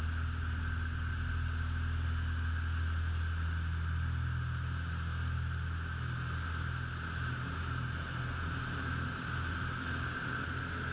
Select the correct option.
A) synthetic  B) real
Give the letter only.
B